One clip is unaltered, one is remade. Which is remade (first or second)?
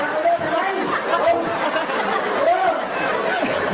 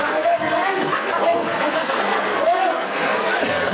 second